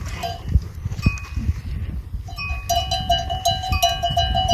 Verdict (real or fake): real